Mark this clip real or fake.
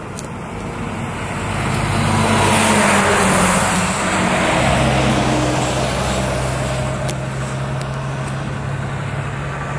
real